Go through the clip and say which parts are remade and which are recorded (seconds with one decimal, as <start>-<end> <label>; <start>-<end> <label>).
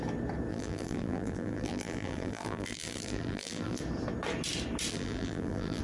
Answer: 0.0-0.5 recorded; 0.5-3.8 remade; 3.8-4.9 recorded; 4.9-5.8 remade